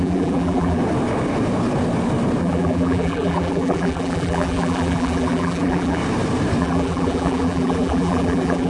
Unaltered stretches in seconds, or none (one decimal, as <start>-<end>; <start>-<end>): 0.8-2.4; 6.0-6.6